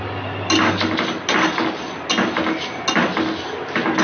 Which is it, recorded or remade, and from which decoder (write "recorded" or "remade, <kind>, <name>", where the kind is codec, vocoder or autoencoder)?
recorded